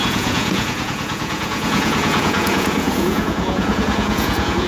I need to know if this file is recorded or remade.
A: remade